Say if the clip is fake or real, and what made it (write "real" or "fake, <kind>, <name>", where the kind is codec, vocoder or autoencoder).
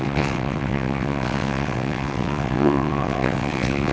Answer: fake, vocoder, WaveNeXt